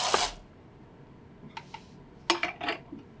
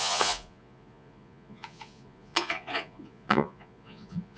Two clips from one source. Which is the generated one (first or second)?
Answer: second